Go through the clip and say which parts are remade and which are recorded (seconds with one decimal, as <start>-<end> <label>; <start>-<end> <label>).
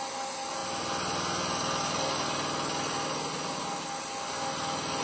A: 0.0-5.0 recorded